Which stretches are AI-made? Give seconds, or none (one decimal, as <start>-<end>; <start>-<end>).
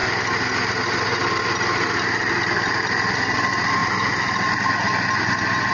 none